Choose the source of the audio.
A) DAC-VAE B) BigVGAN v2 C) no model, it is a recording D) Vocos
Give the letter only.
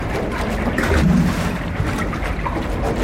C